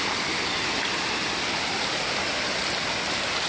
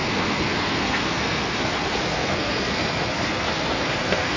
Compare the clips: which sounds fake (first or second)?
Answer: second